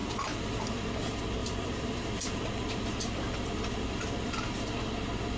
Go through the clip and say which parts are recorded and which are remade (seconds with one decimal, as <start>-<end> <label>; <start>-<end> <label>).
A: 0.0-0.6 remade; 0.6-1.4 recorded; 1.4-4.6 remade; 4.6-5.4 recorded